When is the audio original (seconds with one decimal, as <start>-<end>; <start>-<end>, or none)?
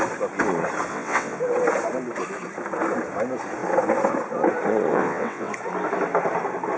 0.0-0.9; 1.4-4.9; 5.5-6.8